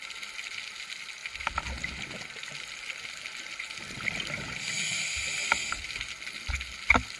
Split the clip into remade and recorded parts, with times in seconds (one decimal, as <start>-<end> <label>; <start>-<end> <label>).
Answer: 0.0-7.2 recorded